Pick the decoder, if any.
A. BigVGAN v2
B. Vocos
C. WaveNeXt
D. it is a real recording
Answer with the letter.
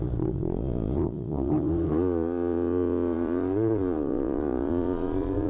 B